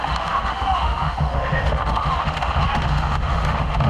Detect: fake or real fake